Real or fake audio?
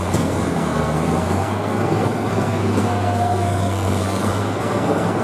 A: fake